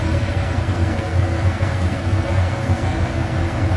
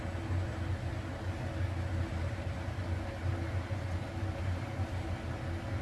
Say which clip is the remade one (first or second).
first